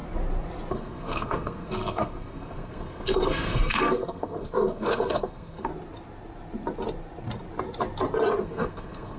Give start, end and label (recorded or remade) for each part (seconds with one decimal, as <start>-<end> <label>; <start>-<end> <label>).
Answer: 0.0-0.7 recorded; 0.7-5.7 remade; 5.7-8.4 recorded; 8.4-9.2 remade